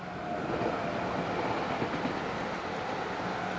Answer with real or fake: real